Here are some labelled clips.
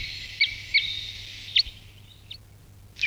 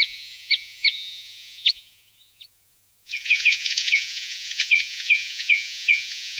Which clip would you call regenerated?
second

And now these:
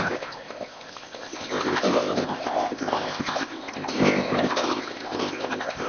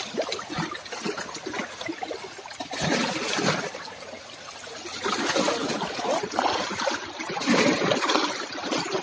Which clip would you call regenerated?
first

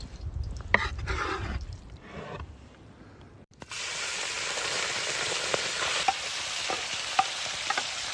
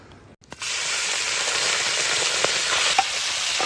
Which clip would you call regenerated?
first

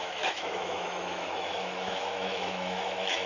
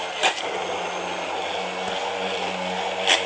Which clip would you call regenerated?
first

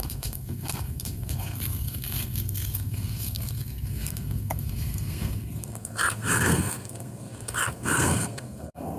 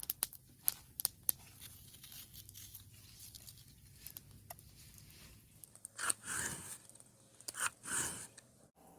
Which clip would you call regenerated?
first